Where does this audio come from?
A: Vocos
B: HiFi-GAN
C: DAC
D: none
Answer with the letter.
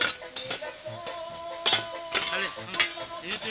D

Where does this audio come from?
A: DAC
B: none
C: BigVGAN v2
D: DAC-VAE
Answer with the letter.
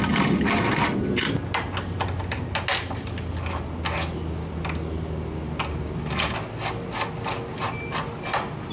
B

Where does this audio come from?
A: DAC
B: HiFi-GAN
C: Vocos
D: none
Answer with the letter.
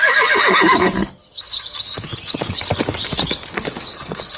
A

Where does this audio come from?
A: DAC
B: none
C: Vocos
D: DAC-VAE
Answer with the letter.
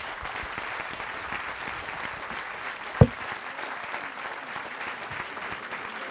B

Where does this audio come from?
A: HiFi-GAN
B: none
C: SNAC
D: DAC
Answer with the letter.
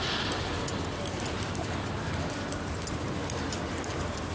B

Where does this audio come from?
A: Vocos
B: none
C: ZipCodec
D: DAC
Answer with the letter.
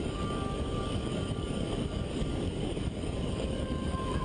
D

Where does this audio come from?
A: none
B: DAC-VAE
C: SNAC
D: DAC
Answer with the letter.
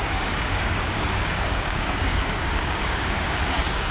D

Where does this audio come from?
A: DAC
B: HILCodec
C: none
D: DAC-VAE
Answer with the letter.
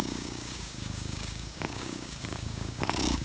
A